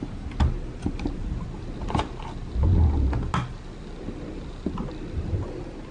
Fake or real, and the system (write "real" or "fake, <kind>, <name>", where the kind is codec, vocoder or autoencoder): real